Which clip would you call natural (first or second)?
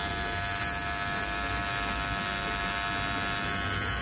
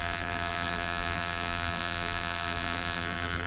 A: first